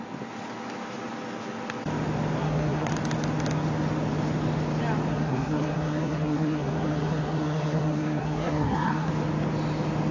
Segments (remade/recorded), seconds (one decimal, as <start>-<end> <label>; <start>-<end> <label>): 0.0-2.4 recorded; 2.4-2.9 remade; 2.9-5.1 recorded; 5.1-9.1 remade; 9.1-10.1 recorded